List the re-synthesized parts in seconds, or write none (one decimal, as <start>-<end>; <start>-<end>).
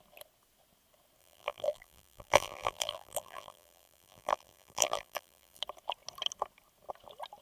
1.2-5.6